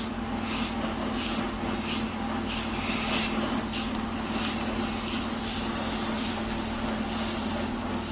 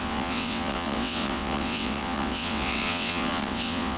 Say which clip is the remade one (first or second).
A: second